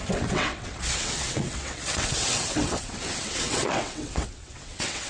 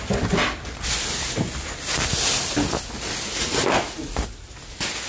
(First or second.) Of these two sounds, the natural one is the second